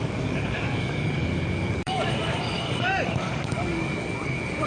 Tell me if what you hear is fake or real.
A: fake